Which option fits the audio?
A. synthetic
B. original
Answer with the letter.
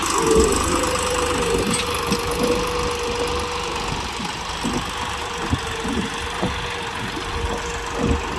B